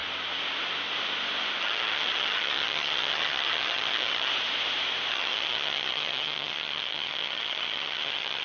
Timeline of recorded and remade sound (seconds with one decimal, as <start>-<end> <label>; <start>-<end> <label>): 0.0-1.6 recorded; 1.6-4.3 remade; 4.3-5.1 recorded; 5.1-8.4 remade